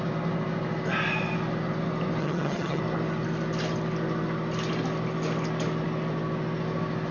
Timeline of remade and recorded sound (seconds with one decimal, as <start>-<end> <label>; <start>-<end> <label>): 0.0-2.2 recorded; 2.2-2.8 remade; 2.8-7.1 recorded